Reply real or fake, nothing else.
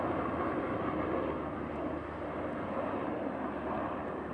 real